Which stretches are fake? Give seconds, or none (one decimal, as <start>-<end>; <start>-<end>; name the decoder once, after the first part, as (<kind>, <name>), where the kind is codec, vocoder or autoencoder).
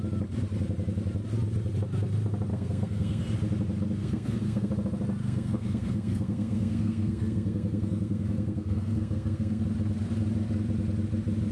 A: 2.5-3.2 (codec, SNAC); 4.0-4.7; 5.2-9.6